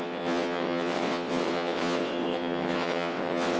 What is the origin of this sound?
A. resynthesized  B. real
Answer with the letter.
A